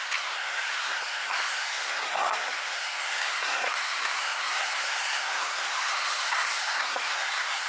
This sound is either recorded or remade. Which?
remade